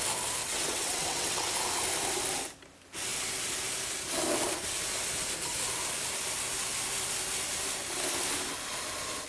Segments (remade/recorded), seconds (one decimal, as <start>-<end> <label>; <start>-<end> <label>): 0.0-0.4 recorded; 0.4-1.5 remade; 1.5-9.3 recorded